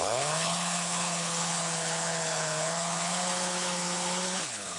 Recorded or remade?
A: remade